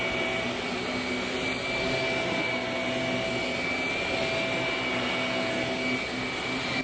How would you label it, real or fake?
real